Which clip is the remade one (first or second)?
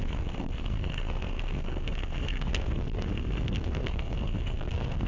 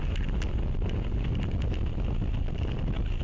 first